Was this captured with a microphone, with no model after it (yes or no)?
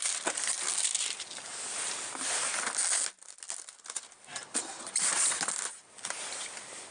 yes